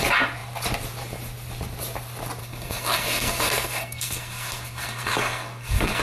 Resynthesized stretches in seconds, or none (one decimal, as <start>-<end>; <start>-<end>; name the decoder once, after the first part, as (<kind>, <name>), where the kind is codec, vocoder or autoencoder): 2.4-6.0 (codec, SNAC)